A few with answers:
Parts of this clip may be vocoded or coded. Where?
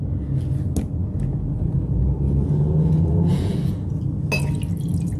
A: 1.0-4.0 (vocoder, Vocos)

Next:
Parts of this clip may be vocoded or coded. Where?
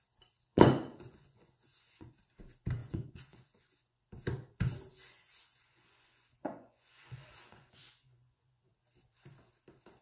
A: 0.5-2.1 (vocoder, Vocos); 2.8-4.0; 4.9-8.7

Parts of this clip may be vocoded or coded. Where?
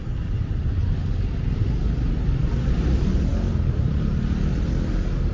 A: none